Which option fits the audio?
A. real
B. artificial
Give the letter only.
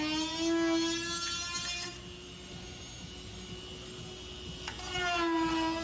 A